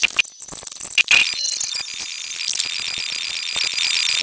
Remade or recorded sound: recorded